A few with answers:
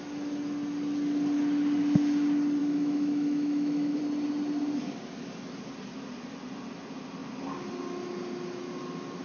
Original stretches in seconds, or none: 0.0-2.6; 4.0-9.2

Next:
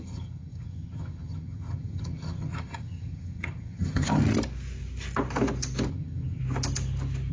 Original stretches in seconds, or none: 4.2-5.9; 6.4-7.3

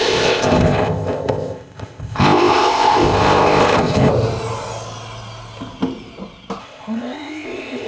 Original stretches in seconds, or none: 4.1-6.6